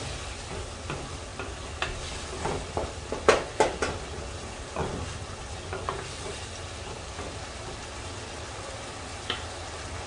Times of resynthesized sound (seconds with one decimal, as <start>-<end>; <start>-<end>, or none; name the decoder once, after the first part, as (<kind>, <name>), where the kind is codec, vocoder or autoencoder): none